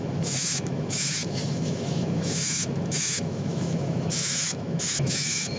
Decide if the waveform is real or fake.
fake